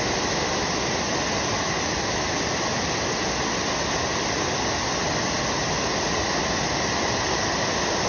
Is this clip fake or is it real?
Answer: real